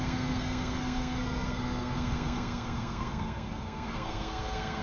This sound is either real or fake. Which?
fake